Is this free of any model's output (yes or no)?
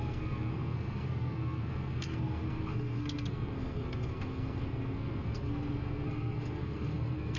no